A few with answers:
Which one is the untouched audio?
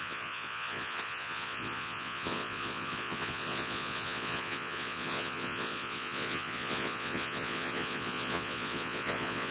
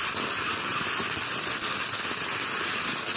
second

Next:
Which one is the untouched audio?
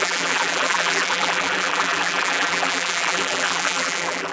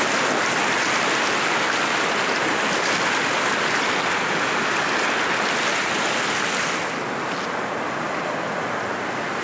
second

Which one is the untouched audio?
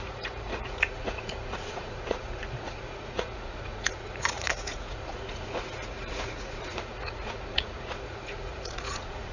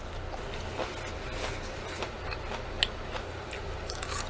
second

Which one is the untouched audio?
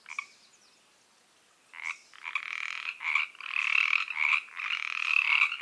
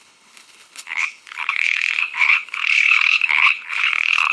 first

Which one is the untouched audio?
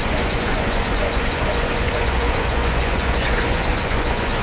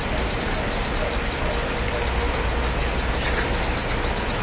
second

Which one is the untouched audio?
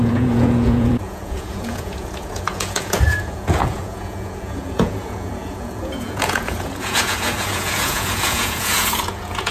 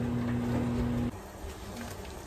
second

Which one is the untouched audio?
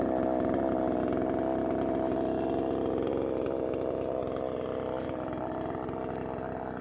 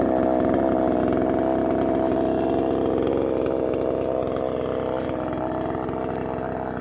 second